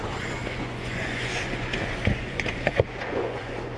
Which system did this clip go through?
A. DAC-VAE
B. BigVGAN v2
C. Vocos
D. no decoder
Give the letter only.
C